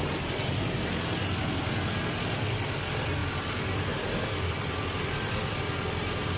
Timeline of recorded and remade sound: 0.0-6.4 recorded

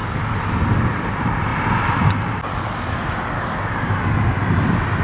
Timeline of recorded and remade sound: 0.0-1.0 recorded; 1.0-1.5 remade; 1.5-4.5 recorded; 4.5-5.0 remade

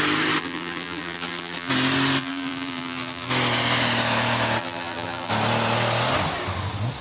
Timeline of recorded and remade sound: 0.0-0.4 recorded; 0.4-1.7 remade; 1.7-2.2 recorded; 2.2-3.3 remade; 3.3-4.6 recorded; 4.6-5.3 remade; 5.3-7.0 recorded

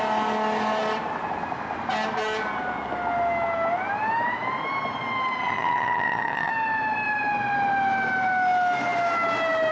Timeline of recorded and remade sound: 0.0-5.4 recorded; 5.4-6.5 remade; 6.5-9.7 recorded